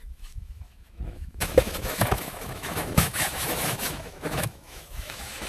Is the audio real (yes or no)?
no